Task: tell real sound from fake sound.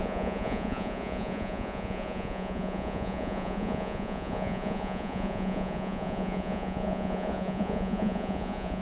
fake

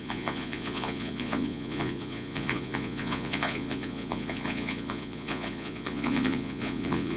fake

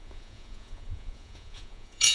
fake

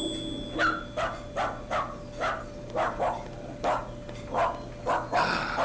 real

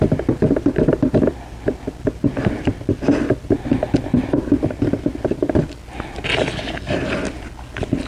real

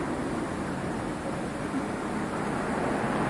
real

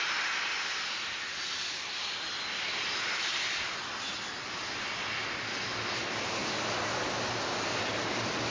real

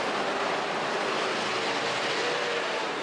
real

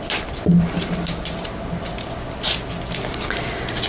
real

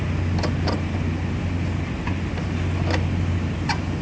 real